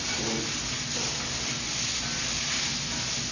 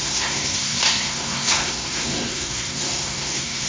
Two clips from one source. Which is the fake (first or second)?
second